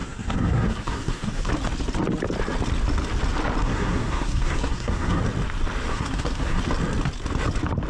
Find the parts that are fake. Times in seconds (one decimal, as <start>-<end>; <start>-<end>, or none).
0.0-1.5; 3.6-5.2; 5.9-6.6